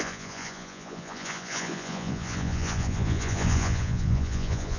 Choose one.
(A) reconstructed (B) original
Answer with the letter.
A